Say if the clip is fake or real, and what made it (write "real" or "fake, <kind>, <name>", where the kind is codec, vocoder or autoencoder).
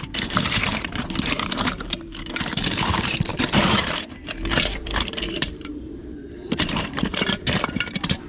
fake, vocoder, BigVGAN v2